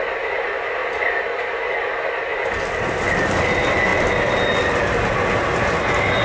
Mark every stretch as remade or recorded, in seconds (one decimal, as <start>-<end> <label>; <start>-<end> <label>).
0.0-6.2 recorded